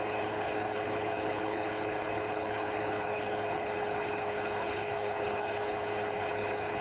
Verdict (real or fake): fake